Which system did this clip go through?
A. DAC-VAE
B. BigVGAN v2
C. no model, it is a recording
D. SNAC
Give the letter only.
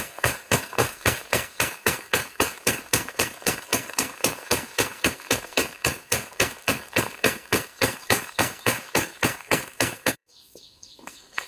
D